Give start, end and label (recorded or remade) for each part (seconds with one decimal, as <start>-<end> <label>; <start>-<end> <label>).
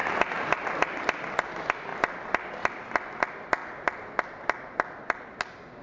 0.0-5.8 recorded